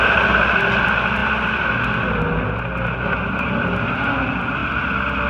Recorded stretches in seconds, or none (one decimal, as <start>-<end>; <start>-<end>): 0.0-5.3